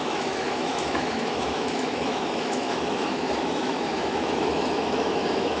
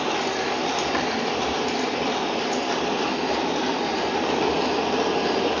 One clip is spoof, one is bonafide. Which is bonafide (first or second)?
second